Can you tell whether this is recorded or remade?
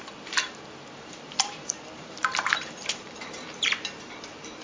remade